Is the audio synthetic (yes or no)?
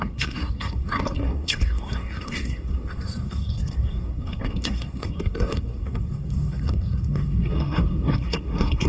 yes